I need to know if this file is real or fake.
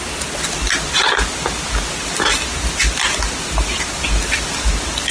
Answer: real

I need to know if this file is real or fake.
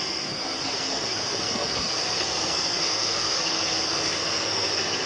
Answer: fake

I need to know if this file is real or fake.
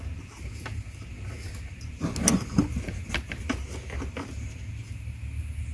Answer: real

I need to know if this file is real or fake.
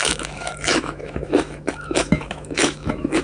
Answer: fake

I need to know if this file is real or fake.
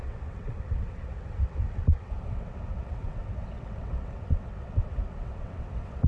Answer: fake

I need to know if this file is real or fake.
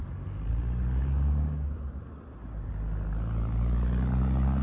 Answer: real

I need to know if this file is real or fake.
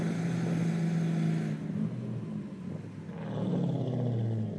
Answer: real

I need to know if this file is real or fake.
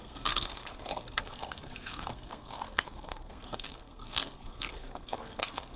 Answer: fake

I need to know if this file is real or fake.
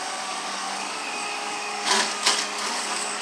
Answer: fake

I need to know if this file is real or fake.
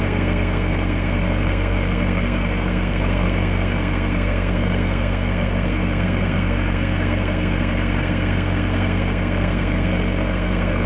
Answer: fake